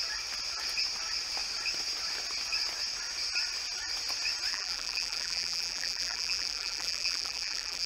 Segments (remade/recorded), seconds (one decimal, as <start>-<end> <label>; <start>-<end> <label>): 0.0-4.5 recorded; 4.5-7.9 remade

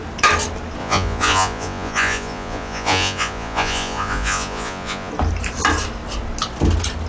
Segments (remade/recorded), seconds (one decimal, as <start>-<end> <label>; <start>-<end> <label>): 0.0-0.8 recorded; 0.8-5.1 remade; 5.1-7.1 recorded

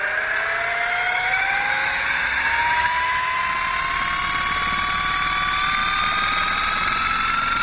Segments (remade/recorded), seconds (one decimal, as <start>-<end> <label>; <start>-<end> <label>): 0.0-0.7 recorded; 0.7-3.4 remade; 3.4-7.6 recorded

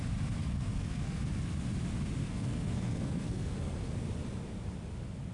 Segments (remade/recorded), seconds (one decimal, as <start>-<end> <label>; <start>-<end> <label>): 0.0-0.4 recorded; 0.4-1.2 remade; 1.2-2.2 recorded; 2.2-3.9 remade; 3.9-5.3 recorded